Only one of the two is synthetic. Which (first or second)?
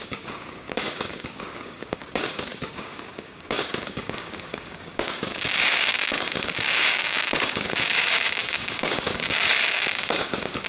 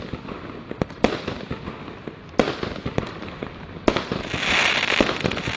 first